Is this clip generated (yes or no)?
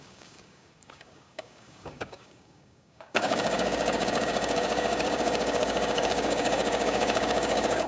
yes